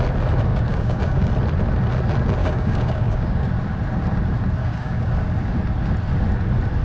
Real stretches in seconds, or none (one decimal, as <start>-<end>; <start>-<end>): 0.0-0.5; 1.3-2.4; 3.5-4.6; 5.1-6.8